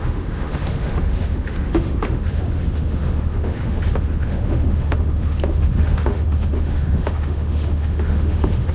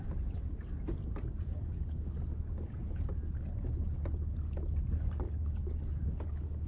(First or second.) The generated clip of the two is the first